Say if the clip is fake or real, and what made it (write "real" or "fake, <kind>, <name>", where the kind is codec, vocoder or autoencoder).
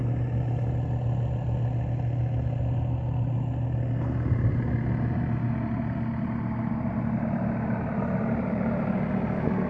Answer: real